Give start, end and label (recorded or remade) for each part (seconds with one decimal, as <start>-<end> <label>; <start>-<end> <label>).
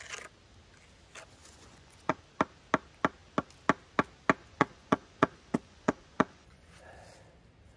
0.0-1.4 recorded; 1.4-2.2 remade; 2.2-4.4 recorded; 4.4-6.8 remade; 6.8-7.8 recorded